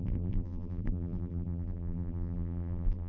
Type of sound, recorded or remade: remade